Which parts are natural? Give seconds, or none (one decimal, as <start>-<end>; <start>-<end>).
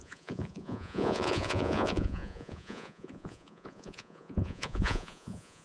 none